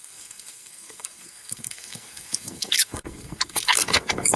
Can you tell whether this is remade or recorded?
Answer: remade